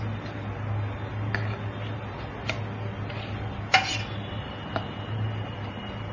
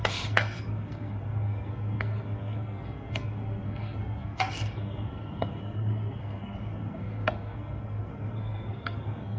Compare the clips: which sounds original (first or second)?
first